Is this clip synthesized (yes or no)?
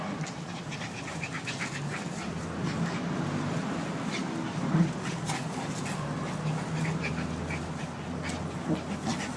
no